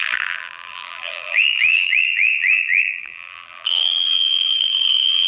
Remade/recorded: remade